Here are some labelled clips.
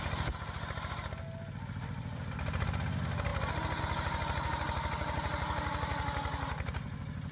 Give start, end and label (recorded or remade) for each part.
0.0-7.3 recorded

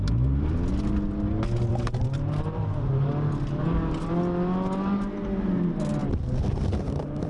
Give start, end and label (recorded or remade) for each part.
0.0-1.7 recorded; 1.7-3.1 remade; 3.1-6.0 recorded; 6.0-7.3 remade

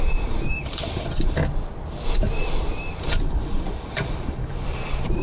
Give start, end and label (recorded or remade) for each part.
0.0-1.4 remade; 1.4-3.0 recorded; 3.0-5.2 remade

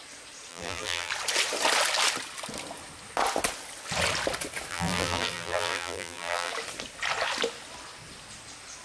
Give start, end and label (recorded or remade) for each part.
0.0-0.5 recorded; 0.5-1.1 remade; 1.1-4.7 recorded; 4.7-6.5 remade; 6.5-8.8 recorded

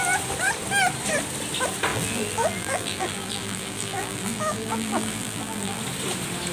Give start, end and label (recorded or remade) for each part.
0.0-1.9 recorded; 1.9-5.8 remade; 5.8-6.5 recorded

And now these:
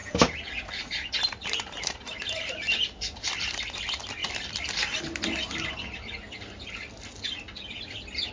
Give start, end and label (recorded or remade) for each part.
0.0-2.5 remade; 2.5-8.3 recorded

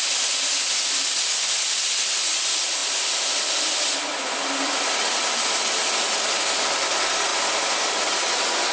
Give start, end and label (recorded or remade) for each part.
0.0-8.7 recorded

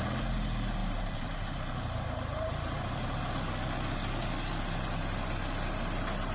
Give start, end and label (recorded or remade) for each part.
0.0-0.8 recorded; 0.8-3.2 remade; 3.2-6.3 recorded